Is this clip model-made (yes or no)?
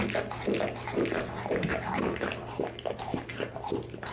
no